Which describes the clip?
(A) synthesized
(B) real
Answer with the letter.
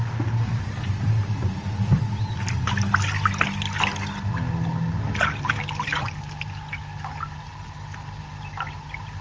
B